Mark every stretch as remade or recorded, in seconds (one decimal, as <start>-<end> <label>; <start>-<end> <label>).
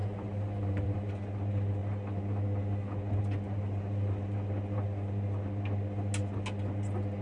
0.0-1.1 remade; 1.1-7.2 recorded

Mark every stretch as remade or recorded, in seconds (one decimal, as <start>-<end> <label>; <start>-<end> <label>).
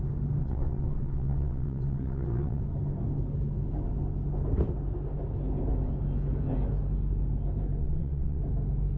0.0-0.4 recorded; 0.4-2.6 remade; 2.6-7.8 recorded; 7.8-8.4 remade; 8.4-9.0 recorded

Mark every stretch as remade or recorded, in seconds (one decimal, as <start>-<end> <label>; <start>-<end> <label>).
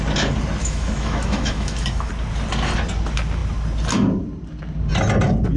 0.0-0.6 recorded; 0.6-2.1 remade; 2.1-5.6 recorded